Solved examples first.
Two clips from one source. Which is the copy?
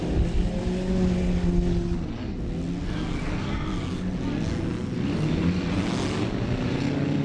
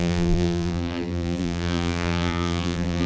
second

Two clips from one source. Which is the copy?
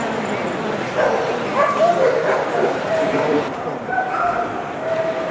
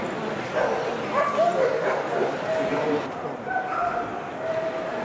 first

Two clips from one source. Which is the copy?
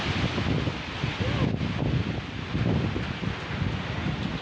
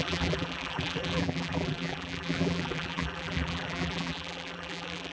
second